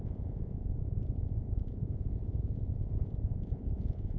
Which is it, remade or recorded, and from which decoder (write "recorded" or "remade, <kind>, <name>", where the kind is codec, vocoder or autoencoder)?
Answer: remade, vocoder, Vocos